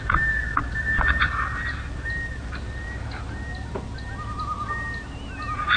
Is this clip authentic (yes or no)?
yes